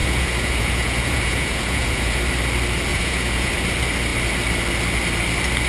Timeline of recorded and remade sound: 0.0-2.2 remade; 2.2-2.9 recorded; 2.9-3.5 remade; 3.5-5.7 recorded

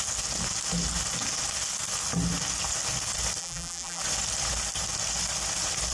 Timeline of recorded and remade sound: 0.0-3.4 recorded; 3.4-4.0 remade; 4.0-5.9 recorded

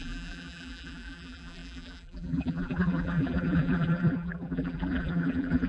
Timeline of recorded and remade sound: 0.0-5.7 remade

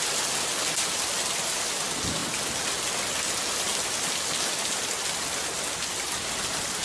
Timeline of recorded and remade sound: 0.0-6.8 recorded